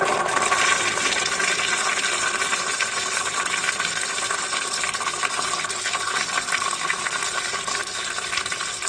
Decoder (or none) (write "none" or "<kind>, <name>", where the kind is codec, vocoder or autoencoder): none